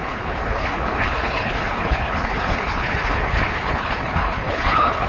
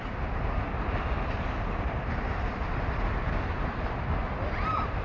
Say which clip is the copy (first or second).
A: first